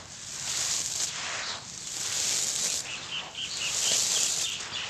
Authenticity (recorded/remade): recorded